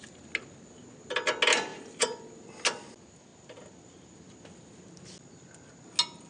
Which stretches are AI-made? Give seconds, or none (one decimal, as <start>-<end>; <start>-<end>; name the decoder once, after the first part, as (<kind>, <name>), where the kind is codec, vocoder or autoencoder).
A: none